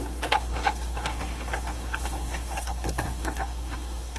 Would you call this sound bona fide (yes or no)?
no